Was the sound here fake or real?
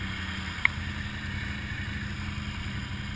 real